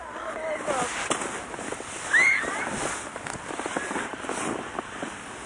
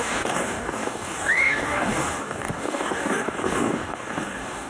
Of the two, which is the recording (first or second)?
first